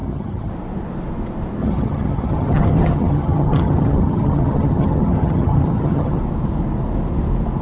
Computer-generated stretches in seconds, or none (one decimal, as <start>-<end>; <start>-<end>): 0.0-0.5; 1.6-6.2

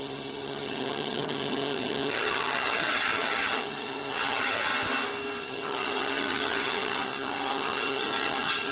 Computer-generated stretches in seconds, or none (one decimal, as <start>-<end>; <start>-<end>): 0.0-4.7; 5.4-8.7